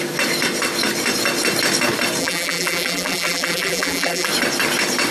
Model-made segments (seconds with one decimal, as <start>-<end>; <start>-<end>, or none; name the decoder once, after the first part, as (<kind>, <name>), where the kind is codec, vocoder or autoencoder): 2.2-4.3 (vocoder, BigVGAN v2)